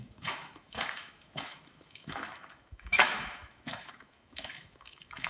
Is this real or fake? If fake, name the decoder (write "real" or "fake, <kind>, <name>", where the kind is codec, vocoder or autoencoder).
fake, autoencoder, DAC-VAE